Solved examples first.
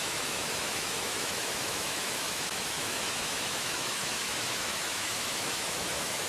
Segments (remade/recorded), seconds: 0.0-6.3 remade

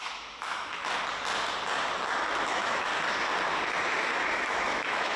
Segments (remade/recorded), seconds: 0.0-0.8 remade; 0.8-2.5 recorded; 2.5-2.9 remade; 2.9-3.7 recorded; 3.7-5.2 remade